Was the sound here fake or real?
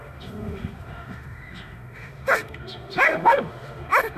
fake